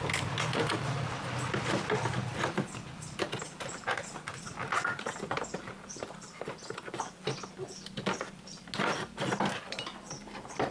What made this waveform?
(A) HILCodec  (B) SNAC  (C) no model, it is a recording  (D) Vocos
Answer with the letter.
C